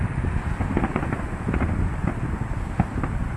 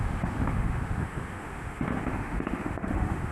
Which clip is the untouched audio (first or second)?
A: first